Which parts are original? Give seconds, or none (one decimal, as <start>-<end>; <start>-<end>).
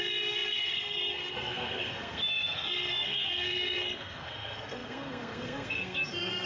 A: none